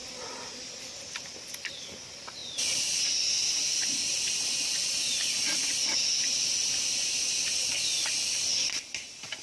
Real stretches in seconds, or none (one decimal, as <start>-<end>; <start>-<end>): 0.0-9.4